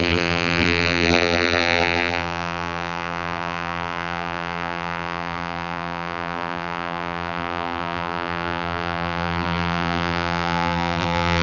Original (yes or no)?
no